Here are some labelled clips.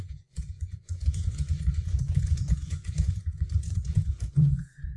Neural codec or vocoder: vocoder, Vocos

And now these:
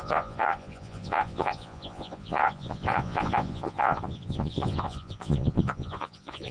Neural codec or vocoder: vocoder, Vocos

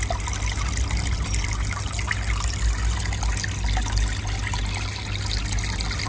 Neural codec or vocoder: none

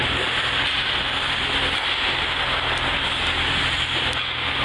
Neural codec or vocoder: none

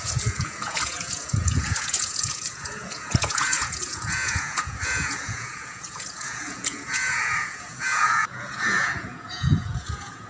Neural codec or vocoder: vocoder, Vocos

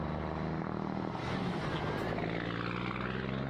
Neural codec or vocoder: none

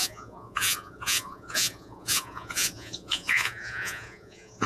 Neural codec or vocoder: vocoder, Vocos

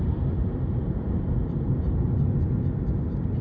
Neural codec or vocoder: none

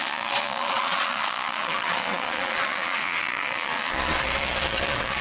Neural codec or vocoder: vocoder, Vocos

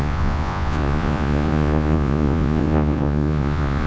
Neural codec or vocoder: vocoder, Vocos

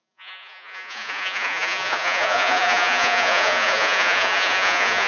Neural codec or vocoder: vocoder, Vocos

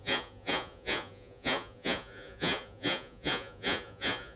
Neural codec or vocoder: vocoder, Vocos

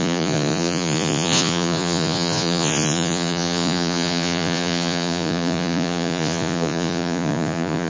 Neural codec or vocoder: vocoder, Vocos